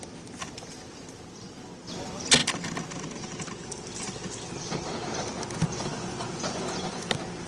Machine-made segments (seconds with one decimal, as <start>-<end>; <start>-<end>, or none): 5.6-7.1